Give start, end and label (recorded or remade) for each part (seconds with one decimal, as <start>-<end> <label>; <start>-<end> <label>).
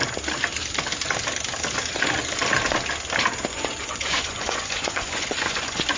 0.0-3.5 recorded; 3.5-6.0 remade